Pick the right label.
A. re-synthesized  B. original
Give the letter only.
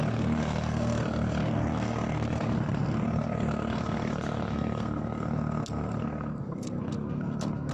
A